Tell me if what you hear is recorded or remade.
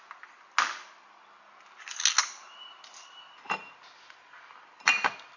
recorded